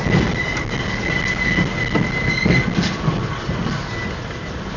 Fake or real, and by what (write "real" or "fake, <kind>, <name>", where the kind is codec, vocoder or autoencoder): real